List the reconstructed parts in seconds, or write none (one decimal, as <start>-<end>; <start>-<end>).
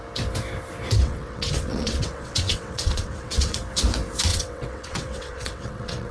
1.0-3.6; 4.3-6.1